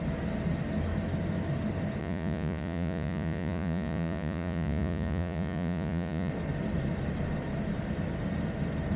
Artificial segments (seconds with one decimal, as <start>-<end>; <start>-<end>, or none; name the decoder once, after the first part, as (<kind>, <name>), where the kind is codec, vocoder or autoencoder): 2.0-6.3 (vocoder, Vocos)